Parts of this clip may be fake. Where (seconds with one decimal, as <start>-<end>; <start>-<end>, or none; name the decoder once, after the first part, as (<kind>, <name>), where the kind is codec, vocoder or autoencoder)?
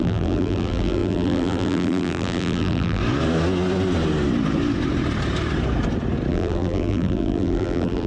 0.0-3.0 (vocoder, BigVGAN v2); 6.3-8.1